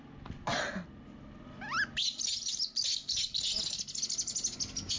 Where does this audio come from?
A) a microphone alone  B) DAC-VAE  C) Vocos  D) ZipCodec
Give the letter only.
A